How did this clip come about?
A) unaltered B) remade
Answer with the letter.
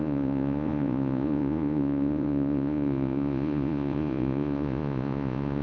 B